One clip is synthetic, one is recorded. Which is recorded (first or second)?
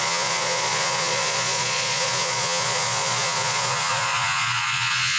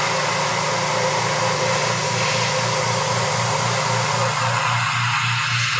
second